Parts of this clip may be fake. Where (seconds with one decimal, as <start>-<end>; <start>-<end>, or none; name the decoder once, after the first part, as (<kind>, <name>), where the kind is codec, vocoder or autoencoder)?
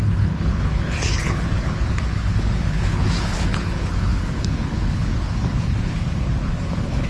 0.0-7.1 (codec, HILCodec)